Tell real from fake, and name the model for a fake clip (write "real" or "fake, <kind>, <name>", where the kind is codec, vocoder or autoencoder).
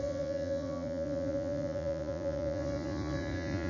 fake, vocoder, Vocos